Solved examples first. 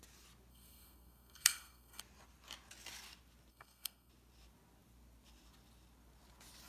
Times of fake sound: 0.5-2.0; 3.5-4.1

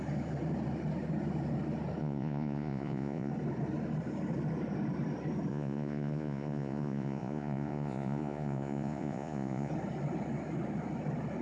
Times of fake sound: 2.0-3.3; 5.5-9.7

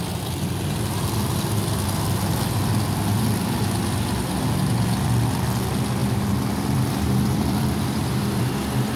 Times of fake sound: 6.0-8.5

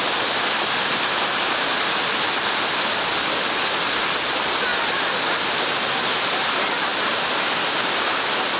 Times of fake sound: none

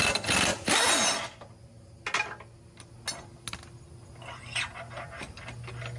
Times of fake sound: none

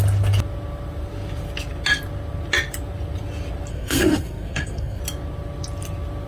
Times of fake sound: 3.7-5.0